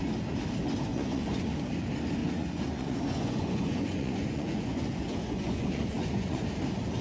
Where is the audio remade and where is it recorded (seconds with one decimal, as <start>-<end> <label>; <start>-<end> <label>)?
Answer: 0.0-0.9 recorded; 0.9-1.5 remade; 1.5-2.2 recorded; 2.2-6.4 remade; 6.4-7.0 recorded